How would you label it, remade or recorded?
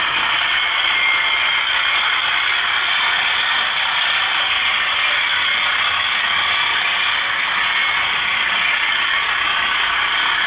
recorded